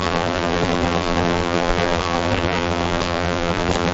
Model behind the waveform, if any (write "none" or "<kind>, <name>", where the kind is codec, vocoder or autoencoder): vocoder, BigVGAN v2